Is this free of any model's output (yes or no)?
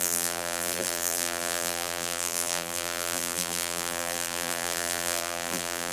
no